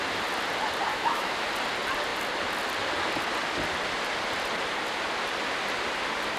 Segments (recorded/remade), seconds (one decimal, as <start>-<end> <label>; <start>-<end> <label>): 0.0-0.9 recorded; 0.9-1.5 remade; 1.5-6.4 recorded